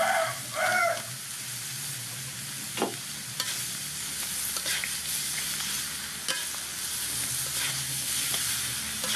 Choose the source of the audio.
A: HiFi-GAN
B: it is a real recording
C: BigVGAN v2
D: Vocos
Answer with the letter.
B